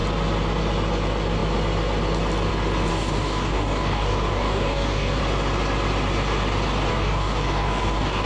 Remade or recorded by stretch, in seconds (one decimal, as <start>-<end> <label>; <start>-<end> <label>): 0.0-2.9 recorded; 2.9-5.2 remade; 5.2-6.9 recorded; 6.9-8.3 remade